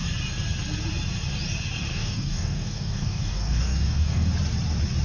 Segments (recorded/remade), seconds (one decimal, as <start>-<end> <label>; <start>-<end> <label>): 0.0-1.9 recorded; 1.9-4.3 remade; 4.3-5.0 recorded